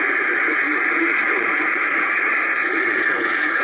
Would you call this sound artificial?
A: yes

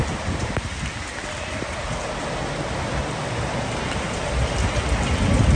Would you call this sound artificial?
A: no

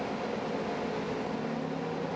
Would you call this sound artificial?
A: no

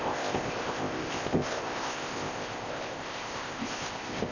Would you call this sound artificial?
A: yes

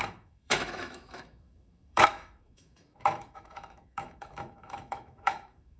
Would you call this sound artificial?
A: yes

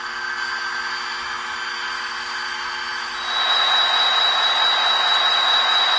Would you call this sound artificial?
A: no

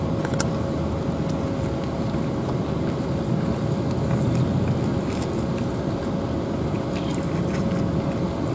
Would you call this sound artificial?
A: no